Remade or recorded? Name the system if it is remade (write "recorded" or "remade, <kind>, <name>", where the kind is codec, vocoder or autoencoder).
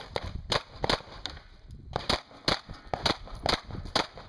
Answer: recorded